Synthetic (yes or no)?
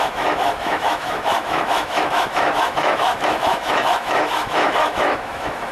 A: yes